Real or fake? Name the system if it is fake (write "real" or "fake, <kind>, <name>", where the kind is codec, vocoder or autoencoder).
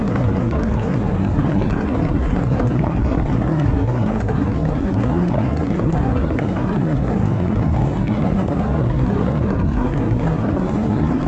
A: fake, codec, SNAC